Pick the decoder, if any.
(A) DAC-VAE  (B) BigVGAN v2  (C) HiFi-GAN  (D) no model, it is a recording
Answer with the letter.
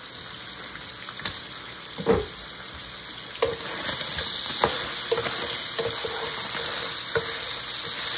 D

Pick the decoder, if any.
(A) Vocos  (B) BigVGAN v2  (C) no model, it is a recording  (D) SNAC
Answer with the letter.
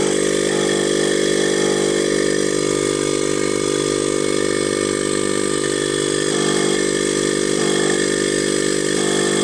C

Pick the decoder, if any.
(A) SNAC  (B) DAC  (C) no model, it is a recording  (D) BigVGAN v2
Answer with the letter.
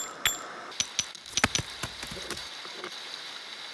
C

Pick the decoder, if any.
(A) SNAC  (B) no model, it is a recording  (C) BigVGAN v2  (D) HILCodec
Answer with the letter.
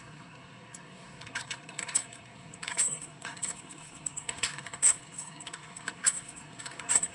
A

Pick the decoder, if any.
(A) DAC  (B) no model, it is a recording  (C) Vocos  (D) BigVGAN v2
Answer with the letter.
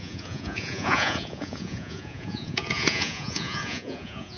C